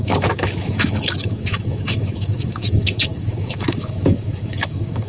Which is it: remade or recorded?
remade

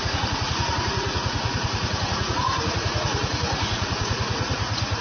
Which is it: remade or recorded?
remade